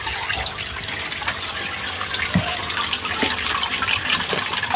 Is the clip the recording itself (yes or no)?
yes